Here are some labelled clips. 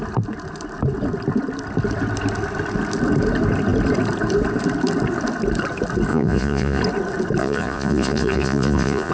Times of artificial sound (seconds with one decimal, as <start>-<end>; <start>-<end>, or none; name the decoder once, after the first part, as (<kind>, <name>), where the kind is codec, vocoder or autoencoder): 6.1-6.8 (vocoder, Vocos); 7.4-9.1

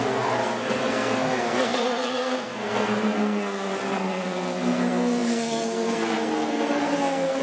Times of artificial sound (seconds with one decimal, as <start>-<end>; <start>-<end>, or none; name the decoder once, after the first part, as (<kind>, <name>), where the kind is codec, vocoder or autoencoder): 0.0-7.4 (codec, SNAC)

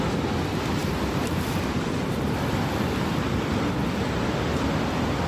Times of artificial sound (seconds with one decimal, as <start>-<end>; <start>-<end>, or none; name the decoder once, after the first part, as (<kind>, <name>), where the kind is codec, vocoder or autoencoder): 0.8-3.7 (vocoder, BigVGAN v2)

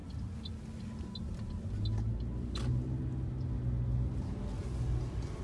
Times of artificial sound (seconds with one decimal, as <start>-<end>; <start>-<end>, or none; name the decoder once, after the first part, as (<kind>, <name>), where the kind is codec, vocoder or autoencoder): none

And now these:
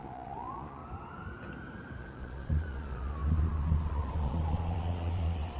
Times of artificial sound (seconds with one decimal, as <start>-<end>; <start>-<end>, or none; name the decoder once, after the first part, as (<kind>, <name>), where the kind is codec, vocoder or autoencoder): 0.0-0.8 (vocoder, Vocos); 2.0-5.6

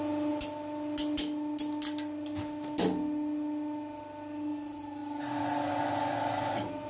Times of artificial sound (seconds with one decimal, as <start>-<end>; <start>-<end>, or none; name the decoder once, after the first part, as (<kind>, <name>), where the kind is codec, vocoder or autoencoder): none

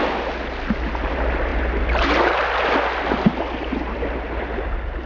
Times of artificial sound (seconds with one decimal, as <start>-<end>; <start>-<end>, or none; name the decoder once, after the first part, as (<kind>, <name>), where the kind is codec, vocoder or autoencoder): none